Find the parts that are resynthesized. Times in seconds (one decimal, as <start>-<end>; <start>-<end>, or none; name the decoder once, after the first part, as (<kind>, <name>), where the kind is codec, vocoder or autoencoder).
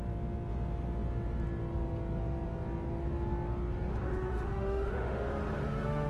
3.9-6.1 (autoencoder, DAC-VAE)